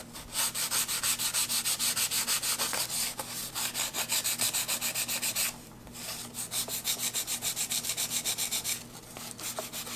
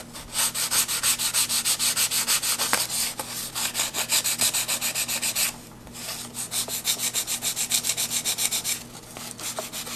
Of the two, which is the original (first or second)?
second